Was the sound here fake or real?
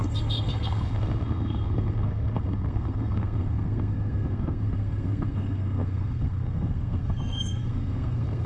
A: fake